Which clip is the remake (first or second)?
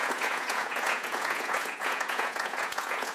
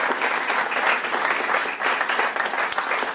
first